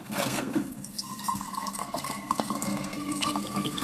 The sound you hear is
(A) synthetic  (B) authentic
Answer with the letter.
A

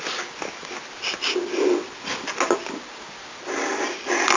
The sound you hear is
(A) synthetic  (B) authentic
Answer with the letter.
B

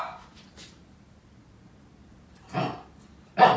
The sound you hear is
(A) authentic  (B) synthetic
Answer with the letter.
A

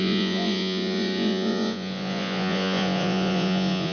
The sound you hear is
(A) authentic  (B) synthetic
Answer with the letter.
B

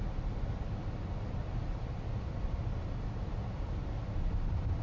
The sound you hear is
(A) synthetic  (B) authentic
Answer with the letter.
B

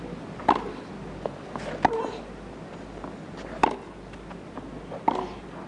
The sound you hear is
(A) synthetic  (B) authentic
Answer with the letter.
B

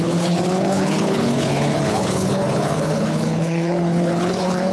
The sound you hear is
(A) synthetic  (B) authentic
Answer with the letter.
A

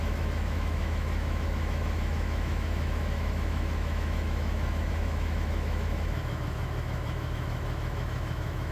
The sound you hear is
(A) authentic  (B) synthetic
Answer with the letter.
B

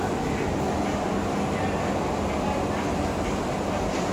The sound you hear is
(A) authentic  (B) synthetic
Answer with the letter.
A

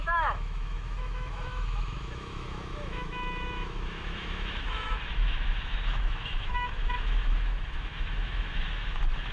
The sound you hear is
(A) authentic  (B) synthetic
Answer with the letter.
B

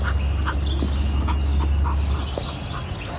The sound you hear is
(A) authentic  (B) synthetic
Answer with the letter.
A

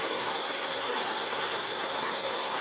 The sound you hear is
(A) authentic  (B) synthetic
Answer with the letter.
B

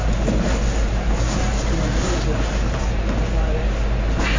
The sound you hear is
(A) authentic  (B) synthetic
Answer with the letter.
A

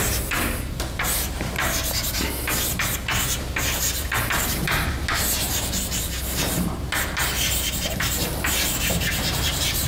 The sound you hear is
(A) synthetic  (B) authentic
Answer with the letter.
A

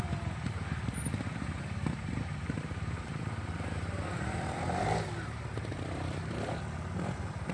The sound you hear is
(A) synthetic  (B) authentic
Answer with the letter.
A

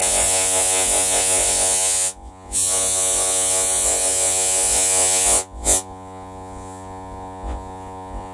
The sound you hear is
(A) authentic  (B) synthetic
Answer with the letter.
B